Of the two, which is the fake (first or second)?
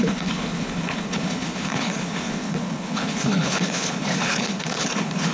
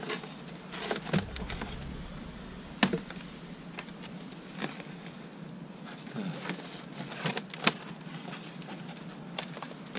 first